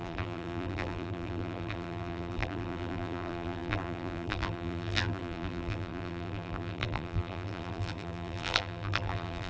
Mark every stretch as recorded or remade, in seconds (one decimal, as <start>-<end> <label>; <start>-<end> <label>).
0.0-9.5 remade